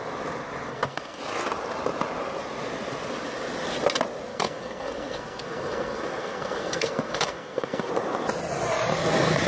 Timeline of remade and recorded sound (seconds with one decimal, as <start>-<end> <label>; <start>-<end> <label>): 0.0-0.7 recorded; 0.7-1.2 remade; 1.2-4.3 recorded; 4.3-7.9 remade; 7.9-9.5 recorded